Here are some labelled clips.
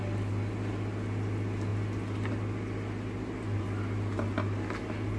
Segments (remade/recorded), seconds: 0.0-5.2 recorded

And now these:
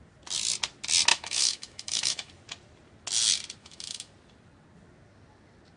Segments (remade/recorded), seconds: 0.0-1.1 recorded; 1.1-2.3 remade; 2.3-3.6 recorded; 3.6-4.1 remade; 4.1-5.8 recorded